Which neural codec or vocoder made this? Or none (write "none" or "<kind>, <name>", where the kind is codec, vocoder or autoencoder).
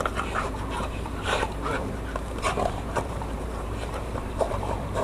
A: vocoder, BigVGAN v2